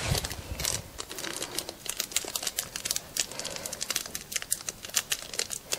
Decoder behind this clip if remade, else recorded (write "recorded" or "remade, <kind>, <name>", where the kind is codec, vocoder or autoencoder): recorded